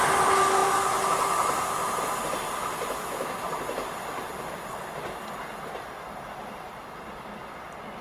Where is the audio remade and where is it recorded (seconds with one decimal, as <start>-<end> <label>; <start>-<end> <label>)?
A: 0.0-8.0 recorded